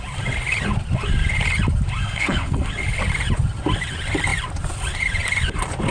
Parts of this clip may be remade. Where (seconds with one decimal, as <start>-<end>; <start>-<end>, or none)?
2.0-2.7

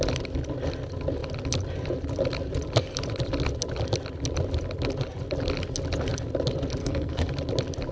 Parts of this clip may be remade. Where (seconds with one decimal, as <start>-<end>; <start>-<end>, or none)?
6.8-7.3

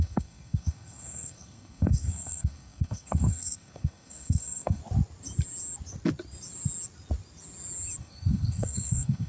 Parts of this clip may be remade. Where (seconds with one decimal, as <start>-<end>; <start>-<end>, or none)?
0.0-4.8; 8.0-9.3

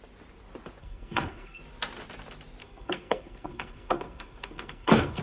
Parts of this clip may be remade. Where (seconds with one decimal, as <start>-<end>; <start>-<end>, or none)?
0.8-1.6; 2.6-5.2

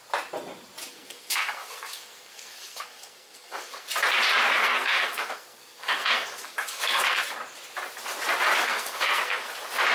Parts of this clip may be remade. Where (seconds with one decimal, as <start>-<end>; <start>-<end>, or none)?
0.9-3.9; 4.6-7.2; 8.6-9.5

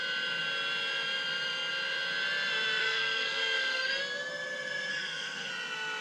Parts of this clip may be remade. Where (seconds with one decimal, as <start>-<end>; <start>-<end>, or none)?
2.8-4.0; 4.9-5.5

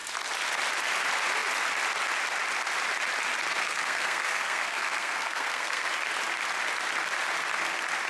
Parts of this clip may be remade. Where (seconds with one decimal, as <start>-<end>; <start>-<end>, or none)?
3.6-5.9